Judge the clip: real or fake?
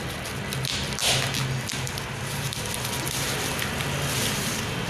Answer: real